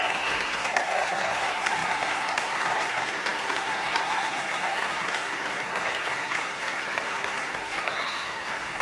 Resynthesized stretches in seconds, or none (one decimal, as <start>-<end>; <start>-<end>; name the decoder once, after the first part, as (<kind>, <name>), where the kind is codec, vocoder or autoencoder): 0.0-8.8 (codec, SNAC)